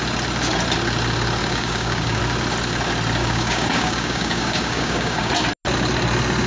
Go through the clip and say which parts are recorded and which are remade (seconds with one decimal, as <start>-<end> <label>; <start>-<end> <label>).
0.0-1.4 recorded; 1.4-2.2 remade; 2.2-3.2 recorded; 3.2-5.3 remade; 5.3-6.5 recorded